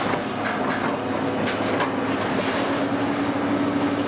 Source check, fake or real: real